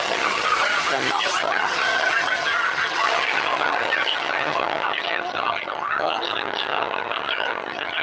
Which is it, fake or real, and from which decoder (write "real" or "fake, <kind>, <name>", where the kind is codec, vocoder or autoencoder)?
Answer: fake, vocoder, HiFi-GAN